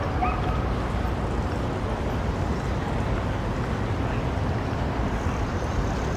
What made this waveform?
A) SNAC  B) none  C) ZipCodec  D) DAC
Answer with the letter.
B